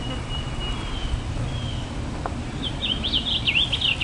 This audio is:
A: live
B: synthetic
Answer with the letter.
A